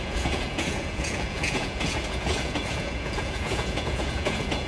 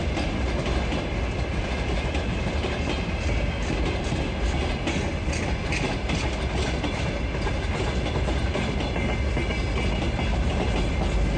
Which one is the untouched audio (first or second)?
second